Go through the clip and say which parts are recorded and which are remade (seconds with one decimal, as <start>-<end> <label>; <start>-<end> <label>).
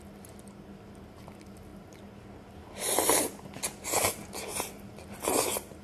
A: 0.0-5.8 recorded